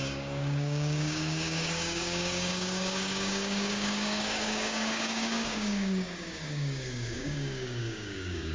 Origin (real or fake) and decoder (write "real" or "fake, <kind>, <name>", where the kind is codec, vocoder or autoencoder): fake, codec, DAC